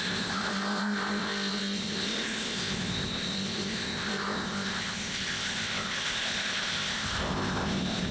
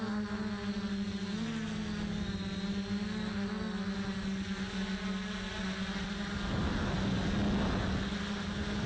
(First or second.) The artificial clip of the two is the first